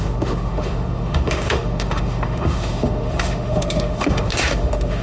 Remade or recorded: remade